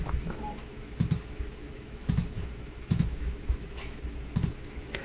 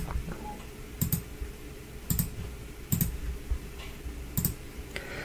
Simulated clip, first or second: first